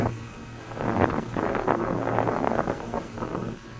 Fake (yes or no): yes